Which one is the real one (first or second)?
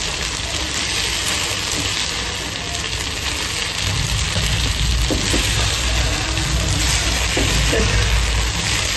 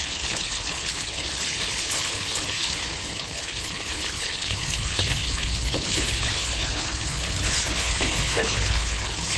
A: first